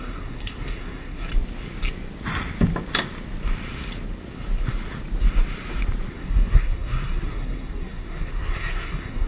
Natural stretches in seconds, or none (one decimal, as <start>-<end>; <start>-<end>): 1.3-6.1